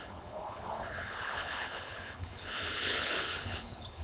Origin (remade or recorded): remade